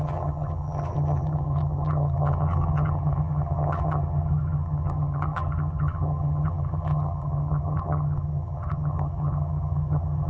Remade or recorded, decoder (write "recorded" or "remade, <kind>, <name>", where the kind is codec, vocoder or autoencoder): remade, vocoder, HiFi-GAN